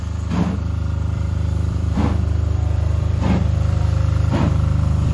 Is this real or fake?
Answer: fake